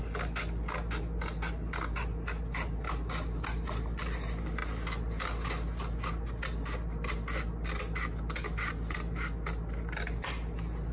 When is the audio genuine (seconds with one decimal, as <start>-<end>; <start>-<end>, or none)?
0.0-10.9